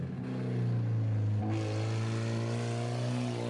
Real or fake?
real